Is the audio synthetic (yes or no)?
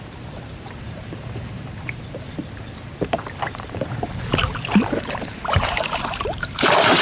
yes